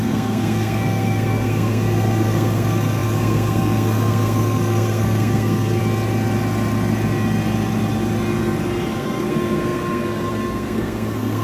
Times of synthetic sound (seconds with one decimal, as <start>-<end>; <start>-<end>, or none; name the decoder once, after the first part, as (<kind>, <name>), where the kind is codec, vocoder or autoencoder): 0.0-5.8 (codec, SNAC); 8.9-11.4